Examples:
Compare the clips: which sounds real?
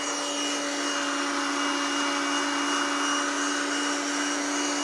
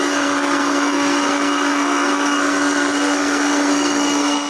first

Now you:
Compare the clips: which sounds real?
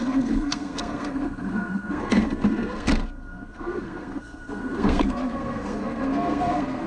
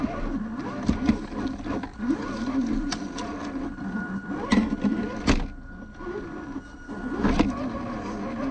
second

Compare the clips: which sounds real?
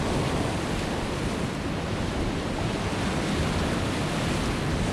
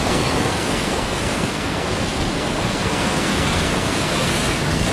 first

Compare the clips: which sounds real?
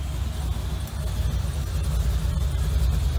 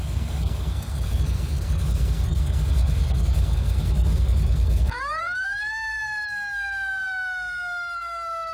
first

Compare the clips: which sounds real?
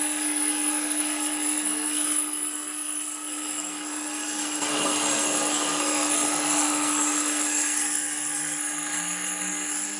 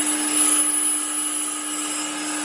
second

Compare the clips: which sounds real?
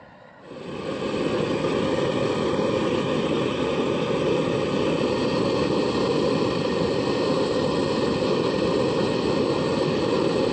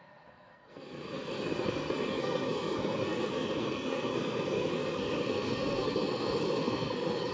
first